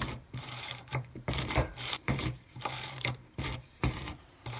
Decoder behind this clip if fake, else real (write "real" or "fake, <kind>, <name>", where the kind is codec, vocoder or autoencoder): fake, vocoder, BigVGAN v2